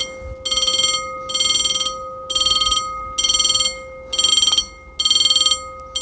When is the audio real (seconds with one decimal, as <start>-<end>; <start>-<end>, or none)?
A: 0.0-6.0